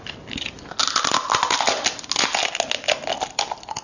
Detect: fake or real real